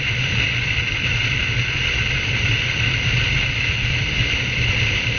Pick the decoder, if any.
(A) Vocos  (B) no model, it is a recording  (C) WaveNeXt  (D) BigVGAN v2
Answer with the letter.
D